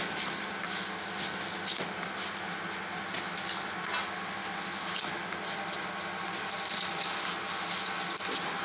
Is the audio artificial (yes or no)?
no